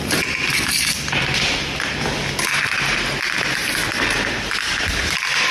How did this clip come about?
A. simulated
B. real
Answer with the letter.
B